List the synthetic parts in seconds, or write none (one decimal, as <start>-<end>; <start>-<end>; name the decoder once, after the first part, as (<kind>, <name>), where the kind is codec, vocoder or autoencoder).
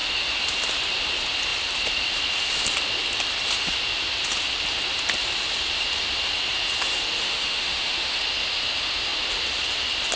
7.2-8.2 (autoencoder, DAC-VAE)